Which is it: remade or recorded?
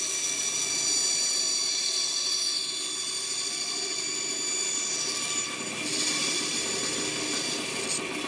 recorded